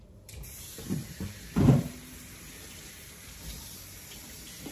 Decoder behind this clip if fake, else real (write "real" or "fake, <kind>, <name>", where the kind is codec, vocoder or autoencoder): fake, vocoder, BigVGAN v2